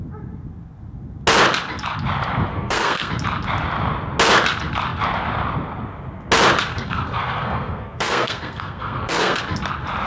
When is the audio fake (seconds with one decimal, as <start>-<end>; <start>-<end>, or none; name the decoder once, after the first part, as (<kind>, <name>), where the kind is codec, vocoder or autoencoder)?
2.5-3.1 (codec, SNAC); 6.7-9.4